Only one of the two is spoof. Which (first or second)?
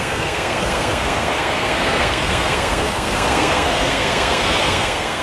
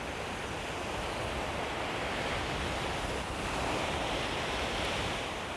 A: first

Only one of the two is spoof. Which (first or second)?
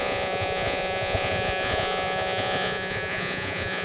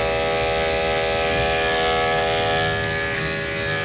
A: first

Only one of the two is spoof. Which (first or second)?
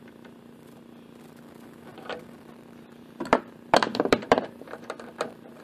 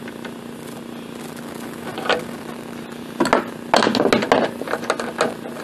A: first